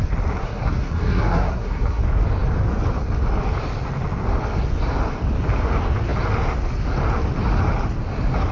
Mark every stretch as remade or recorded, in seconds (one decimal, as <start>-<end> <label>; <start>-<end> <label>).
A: 0.0-0.4 recorded; 0.4-2.0 remade; 2.0-8.5 recorded